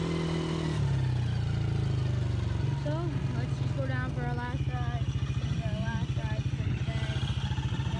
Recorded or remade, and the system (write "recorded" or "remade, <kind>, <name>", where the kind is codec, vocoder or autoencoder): recorded